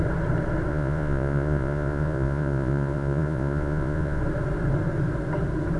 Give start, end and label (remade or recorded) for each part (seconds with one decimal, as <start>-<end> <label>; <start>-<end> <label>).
0.0-0.7 recorded; 0.7-4.2 remade; 4.2-5.8 recorded